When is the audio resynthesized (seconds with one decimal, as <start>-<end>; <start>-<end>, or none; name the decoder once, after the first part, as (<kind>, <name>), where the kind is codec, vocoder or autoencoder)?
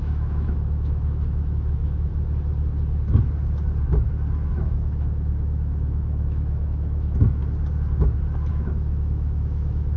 0.0-2.1 (autoencoder, DAC-VAE); 4.5-7.4; 8.5-10.0